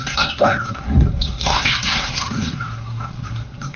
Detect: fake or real fake